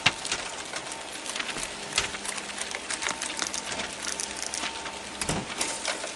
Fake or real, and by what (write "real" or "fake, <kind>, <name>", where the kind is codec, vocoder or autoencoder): real